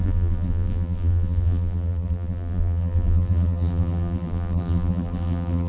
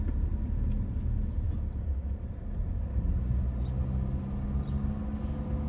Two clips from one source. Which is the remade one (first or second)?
first